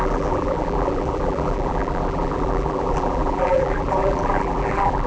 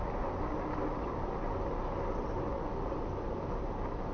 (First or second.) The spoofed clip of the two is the first